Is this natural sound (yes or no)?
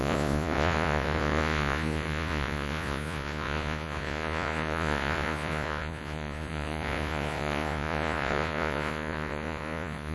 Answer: no